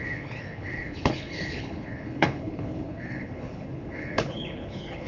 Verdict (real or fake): fake